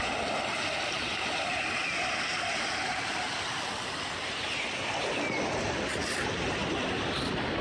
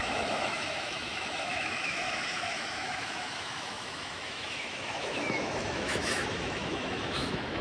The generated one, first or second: second